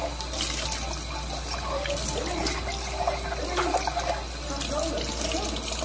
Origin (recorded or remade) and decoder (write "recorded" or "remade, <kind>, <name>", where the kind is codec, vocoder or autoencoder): recorded